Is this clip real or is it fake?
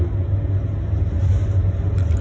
real